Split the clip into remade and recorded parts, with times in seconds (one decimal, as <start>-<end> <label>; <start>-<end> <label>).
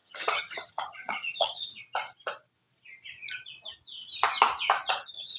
0.0-1.7 remade; 1.7-4.9 recorded; 4.9-5.4 remade